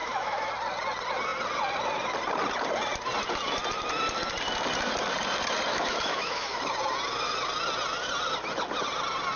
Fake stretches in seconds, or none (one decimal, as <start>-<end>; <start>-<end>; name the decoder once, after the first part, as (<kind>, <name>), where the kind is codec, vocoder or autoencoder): 0.0-0.5 (autoencoder, DAC-VAE); 5.7-6.6